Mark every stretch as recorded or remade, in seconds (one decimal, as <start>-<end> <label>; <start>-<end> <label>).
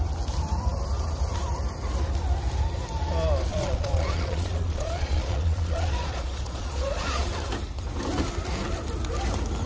0.0-3.5 recorded; 3.5-7.3 remade; 7.3-9.7 recorded